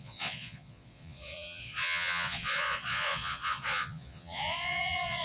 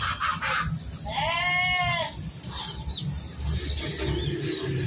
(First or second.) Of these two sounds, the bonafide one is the second